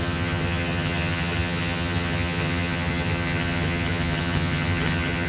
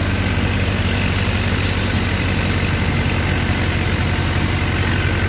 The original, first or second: second